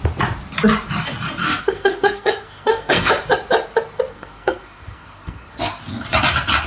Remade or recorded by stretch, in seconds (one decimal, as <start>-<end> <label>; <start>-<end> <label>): 0.0-1.4 recorded; 1.4-3.1 remade; 3.1-4.1 recorded; 4.1-5.6 remade; 5.6-6.7 recorded